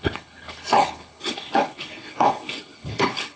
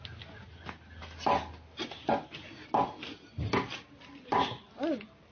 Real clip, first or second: second